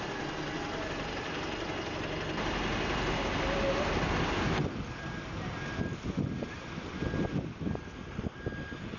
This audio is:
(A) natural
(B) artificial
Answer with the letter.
A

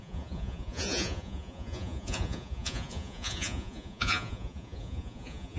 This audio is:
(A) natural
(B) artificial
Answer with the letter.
B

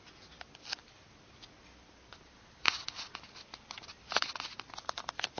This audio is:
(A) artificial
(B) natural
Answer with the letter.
B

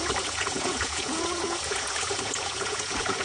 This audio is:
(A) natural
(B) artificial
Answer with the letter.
B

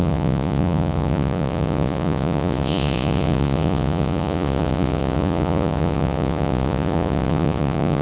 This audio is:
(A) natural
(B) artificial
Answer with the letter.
B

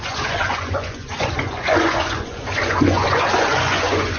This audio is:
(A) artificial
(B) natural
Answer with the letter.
A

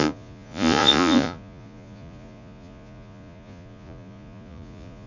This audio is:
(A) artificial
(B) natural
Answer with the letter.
A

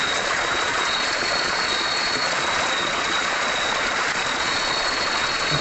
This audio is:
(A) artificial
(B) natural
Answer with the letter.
A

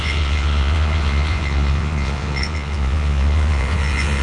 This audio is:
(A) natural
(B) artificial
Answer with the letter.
B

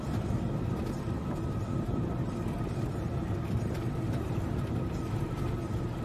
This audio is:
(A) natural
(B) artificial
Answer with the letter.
A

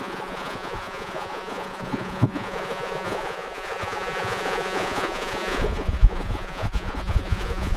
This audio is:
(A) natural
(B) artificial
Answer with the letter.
B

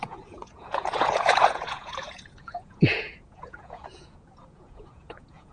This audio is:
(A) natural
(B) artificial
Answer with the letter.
B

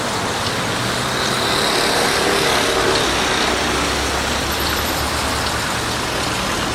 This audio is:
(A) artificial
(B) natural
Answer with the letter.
B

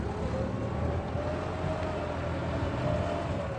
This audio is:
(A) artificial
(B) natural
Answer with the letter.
B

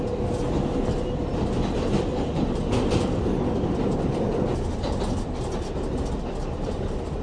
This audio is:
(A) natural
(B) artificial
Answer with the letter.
A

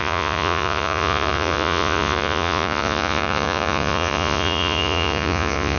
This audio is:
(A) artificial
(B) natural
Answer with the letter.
A